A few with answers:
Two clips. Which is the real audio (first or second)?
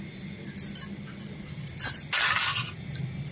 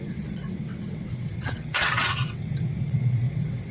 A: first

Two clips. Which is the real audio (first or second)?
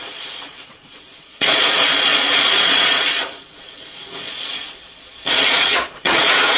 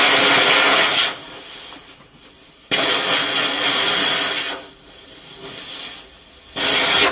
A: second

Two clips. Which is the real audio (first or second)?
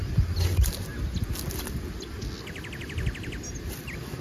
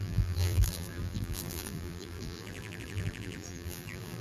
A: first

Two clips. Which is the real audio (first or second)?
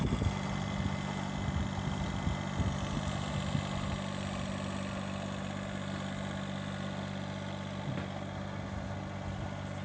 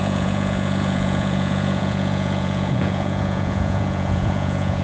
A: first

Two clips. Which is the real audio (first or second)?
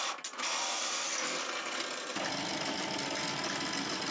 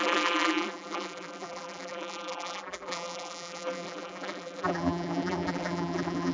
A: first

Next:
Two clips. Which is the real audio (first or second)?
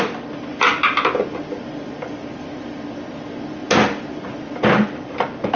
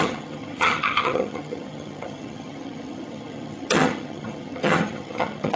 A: first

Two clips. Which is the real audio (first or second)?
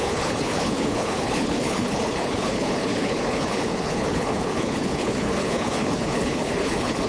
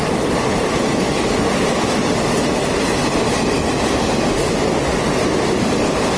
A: second